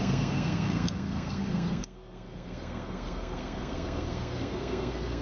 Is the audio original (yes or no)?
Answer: no